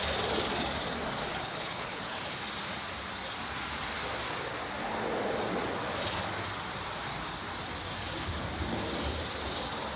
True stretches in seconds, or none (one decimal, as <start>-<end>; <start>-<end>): 0.0-1.3; 2.2-10.0